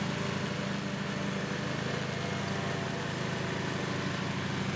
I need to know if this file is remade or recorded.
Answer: recorded